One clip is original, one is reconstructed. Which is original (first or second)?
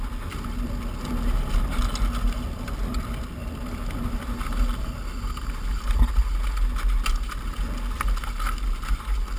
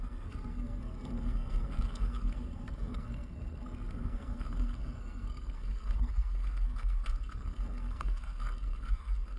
first